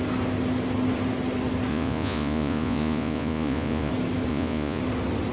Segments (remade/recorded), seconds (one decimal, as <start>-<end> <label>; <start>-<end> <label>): 0.0-1.7 recorded; 1.7-3.9 remade; 3.9-4.3 recorded; 4.3-4.8 remade; 4.8-5.3 recorded